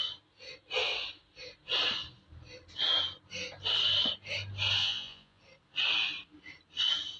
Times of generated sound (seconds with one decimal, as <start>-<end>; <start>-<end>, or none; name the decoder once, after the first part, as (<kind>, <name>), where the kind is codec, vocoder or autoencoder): 4.8-5.4 (vocoder, Vocos)